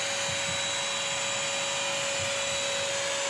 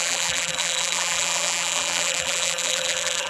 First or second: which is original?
first